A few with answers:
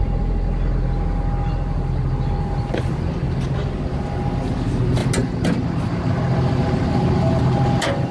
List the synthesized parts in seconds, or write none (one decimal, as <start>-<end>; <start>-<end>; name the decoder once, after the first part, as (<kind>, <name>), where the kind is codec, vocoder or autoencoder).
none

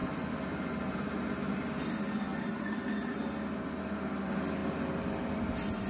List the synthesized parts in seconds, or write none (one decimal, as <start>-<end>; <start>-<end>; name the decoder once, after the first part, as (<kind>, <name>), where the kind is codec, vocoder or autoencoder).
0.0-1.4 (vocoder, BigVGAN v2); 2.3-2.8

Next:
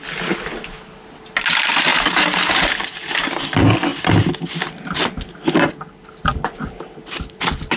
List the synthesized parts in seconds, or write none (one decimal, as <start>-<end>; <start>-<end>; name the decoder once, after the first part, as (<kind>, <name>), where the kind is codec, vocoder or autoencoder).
1.9-3.3 (vocoder, BigVGAN v2)

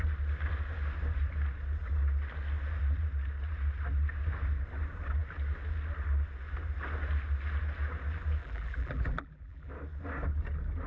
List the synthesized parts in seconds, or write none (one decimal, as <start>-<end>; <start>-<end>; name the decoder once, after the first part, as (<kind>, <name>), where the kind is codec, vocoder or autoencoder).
8.4-9.7 (vocoder, BigVGAN v2)

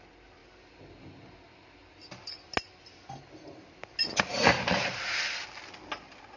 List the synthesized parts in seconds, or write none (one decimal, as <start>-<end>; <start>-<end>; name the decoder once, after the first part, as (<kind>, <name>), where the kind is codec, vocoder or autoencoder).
none

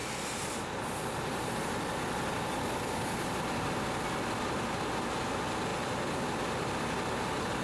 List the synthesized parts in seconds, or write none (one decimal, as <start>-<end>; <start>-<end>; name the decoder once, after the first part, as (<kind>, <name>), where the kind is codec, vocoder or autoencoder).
none